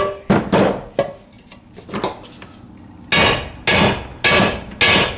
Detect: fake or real real